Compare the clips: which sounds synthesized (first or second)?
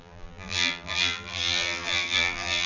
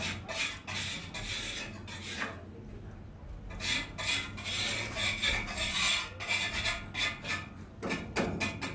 first